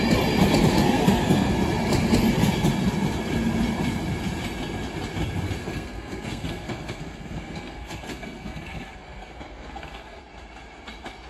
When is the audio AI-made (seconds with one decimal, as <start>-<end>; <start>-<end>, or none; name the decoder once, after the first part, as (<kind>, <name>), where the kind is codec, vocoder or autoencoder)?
0.7-1.5 (codec, SNAC); 5.6-10.2